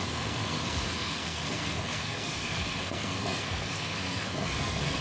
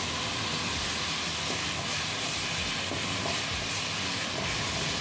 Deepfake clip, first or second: first